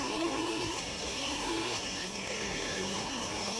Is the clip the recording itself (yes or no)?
no